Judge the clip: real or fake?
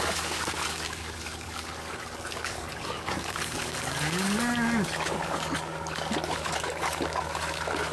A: fake